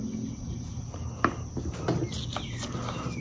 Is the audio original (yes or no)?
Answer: yes